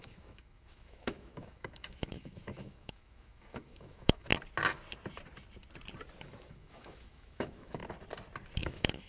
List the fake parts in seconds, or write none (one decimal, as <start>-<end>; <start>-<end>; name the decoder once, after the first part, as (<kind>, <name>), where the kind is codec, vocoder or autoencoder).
0.0-4.3 (autoencoder, DAC-VAE); 6.2-7.8; 8.6-9.1